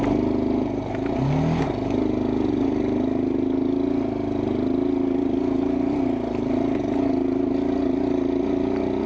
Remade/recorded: recorded